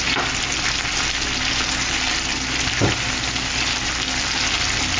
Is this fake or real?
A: real